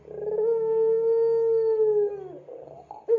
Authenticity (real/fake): real